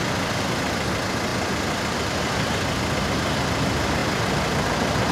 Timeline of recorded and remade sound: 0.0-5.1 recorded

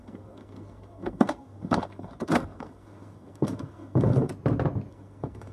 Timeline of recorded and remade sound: 0.0-4.3 remade; 4.3-4.9 recorded; 4.9-5.5 remade

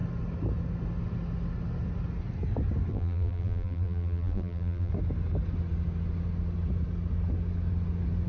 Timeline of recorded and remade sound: 0.0-2.9 recorded; 2.9-4.9 remade; 4.9-8.3 recorded

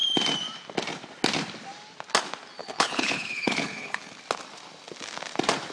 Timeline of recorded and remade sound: 0.0-2.6 recorded; 2.6-4.2 remade; 4.2-5.7 recorded

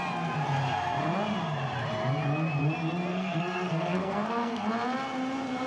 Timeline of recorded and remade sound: 0.0-3.1 recorded; 3.1-4.7 remade; 4.7-5.7 recorded